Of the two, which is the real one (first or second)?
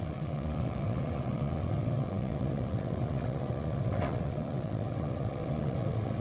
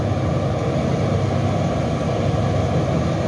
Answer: second